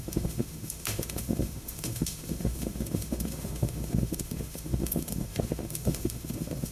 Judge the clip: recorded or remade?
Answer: remade